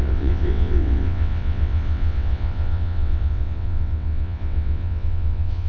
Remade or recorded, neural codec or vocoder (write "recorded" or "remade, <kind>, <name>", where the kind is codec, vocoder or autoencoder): remade, vocoder, WaveNeXt